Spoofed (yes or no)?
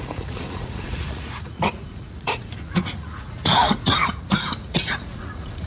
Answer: yes